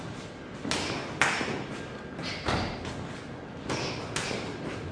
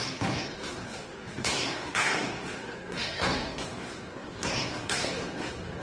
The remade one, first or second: second